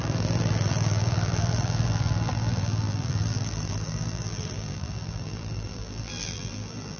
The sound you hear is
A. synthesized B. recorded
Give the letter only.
A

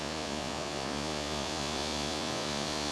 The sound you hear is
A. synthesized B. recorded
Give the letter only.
A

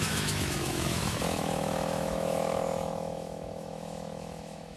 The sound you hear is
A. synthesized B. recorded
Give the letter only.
A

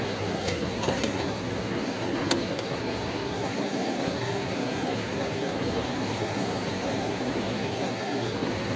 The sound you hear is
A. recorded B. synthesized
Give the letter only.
B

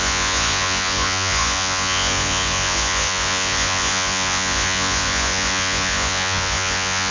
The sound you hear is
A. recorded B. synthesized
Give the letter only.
B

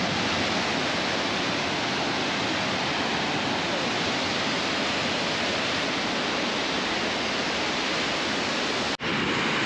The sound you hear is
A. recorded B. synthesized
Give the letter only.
A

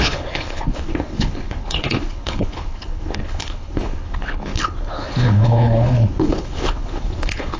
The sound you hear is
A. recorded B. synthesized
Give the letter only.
B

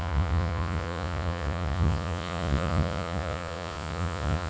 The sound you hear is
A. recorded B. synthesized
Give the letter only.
B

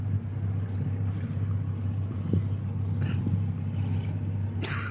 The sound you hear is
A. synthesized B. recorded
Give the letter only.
B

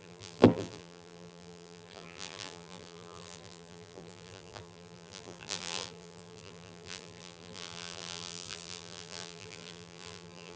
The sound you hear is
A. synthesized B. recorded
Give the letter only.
A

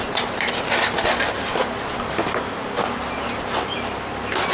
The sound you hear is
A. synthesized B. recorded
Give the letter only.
B